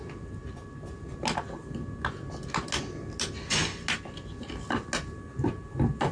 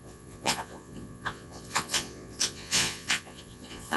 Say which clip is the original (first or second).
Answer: first